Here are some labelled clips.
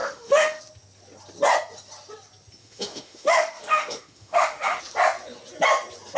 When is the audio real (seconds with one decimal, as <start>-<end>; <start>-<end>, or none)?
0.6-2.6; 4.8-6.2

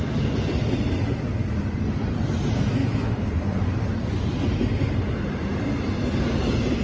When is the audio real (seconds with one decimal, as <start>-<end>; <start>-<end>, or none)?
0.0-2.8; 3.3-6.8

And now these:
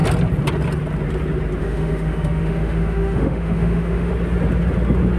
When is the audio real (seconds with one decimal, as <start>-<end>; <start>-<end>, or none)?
0.0-1.6; 4.1-5.2